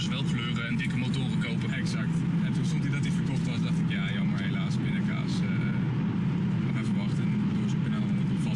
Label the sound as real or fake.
real